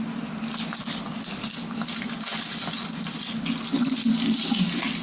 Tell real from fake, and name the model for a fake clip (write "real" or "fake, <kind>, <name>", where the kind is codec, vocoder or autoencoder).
real